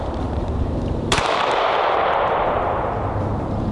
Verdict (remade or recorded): remade